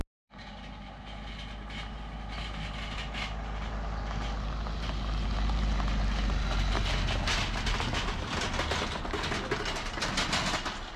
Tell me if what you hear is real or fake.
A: real